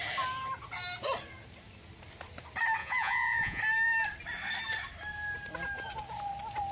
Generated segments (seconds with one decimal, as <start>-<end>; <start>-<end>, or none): 2.8-3.6